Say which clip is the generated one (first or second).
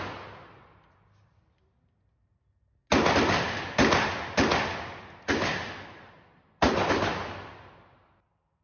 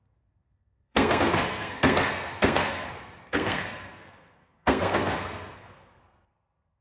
second